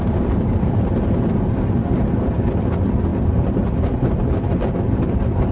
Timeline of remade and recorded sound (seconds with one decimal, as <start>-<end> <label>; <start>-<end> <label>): 0.0-5.5 recorded